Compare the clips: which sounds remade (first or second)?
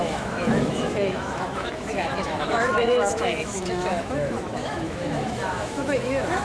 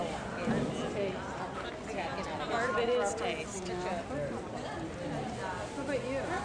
first